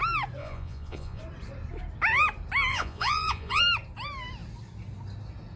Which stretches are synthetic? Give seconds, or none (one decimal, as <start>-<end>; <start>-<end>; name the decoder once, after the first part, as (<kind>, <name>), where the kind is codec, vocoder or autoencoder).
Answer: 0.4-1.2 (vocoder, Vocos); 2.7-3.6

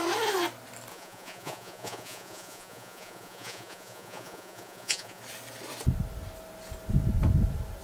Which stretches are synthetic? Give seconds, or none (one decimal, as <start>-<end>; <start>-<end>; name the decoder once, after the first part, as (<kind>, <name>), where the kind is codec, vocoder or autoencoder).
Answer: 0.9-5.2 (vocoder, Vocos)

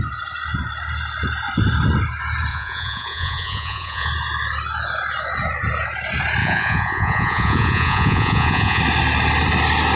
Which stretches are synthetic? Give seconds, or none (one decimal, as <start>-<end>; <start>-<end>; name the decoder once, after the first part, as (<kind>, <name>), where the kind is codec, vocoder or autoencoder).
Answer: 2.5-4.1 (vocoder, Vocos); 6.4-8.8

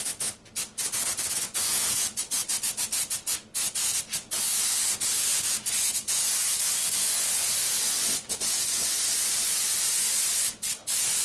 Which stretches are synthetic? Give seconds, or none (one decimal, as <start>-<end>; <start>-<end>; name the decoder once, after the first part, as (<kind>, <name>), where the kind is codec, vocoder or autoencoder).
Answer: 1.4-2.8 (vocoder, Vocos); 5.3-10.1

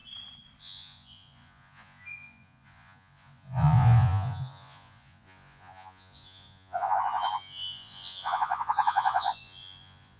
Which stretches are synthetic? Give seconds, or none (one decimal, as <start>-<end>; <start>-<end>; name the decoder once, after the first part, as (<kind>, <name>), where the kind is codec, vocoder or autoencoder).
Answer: 0.6-10.2 (vocoder, Vocos)

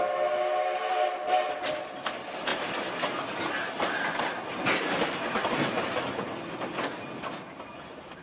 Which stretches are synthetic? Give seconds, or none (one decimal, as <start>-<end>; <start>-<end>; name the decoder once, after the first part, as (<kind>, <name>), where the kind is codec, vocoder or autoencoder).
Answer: none

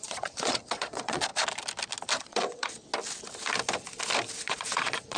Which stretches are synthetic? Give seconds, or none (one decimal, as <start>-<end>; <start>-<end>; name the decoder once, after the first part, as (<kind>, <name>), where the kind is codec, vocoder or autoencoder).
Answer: 0.0-1.3 (vocoder, Vocos); 2.2-2.9; 4.4-5.2